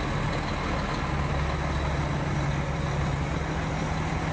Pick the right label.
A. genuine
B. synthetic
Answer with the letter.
A